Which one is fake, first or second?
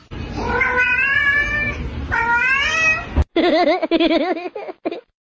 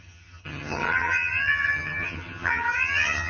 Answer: second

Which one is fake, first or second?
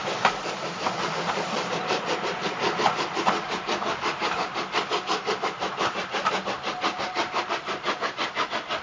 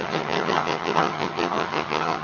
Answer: second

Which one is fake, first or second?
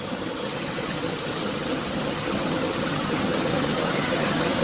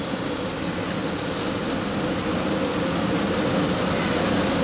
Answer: first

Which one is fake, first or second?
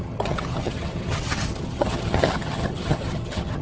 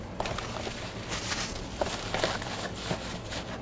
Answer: first